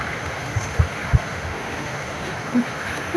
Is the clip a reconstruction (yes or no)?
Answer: yes